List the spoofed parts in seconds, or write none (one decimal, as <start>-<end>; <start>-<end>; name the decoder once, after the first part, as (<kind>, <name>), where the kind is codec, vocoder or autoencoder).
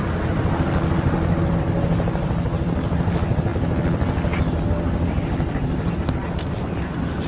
none